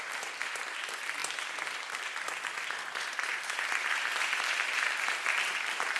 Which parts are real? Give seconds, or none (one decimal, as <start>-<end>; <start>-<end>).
0.0-6.0